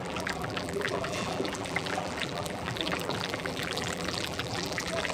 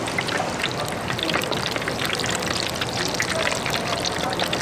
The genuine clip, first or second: second